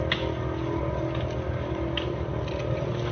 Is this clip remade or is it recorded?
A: recorded